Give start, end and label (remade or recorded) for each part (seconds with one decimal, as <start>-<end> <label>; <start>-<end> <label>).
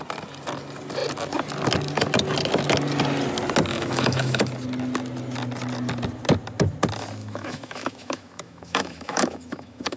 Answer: 0.0-3.7 recorded; 3.7-4.4 remade; 4.4-7.2 recorded; 7.2-10.0 remade